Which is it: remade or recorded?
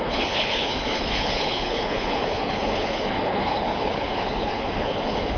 remade